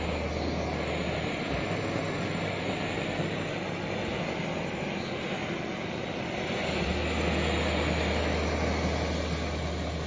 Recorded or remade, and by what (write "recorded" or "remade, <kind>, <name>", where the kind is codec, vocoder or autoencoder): recorded